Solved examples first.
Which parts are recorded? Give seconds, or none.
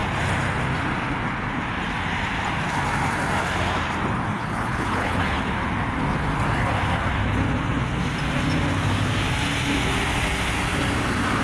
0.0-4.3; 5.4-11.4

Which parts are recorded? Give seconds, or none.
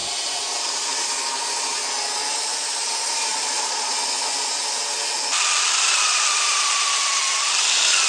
1.8-2.3; 3.9-5.8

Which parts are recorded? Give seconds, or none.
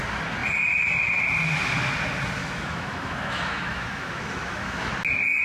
0.0-2.4; 4.9-5.4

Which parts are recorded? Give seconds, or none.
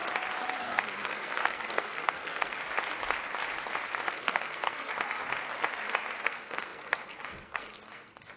0.0-0.6; 2.6-4.1; 4.9-6.2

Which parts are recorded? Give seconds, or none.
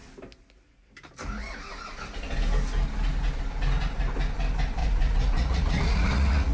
0.0-4.8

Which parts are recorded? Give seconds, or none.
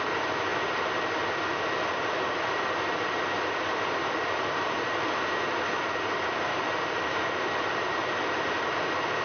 0.5-1.9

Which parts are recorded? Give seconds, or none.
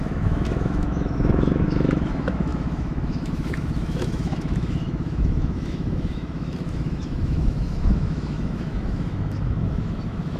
none